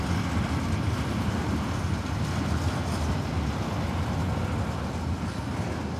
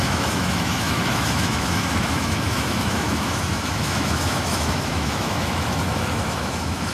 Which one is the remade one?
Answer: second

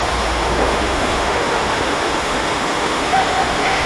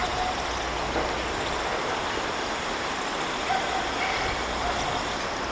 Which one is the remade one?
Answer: first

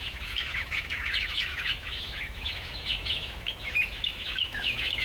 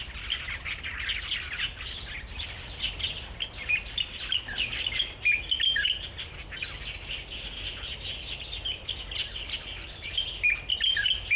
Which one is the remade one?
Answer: first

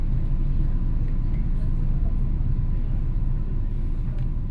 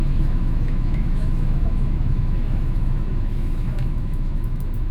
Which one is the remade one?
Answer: second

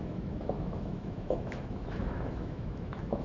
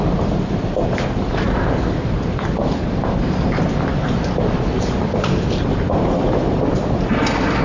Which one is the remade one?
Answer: first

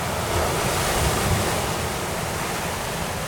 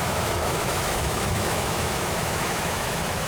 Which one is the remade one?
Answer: second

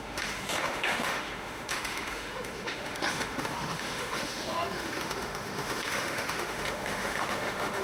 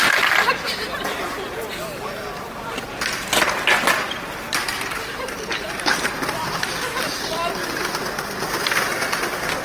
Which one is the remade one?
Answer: first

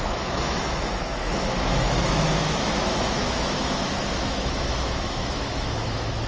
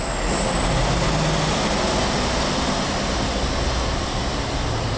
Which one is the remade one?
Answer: first